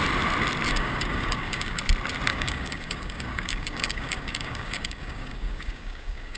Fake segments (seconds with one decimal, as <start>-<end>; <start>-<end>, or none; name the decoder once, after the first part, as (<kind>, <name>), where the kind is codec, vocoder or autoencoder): 0.7-1.8 (codec, DAC); 2.3-6.4